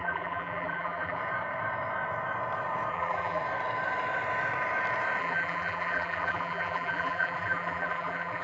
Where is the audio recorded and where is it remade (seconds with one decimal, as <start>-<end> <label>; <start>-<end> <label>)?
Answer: 0.0-1.2 remade; 1.2-2.9 recorded; 2.9-3.4 remade; 3.4-5.2 recorded; 5.2-8.4 remade